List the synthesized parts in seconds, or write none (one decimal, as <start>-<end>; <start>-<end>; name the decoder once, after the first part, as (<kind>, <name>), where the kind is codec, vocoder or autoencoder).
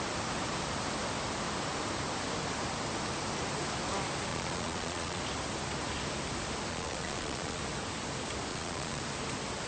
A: 4.3-5.2 (vocoder, Vocos); 6.7-7.6; 8.5-9.0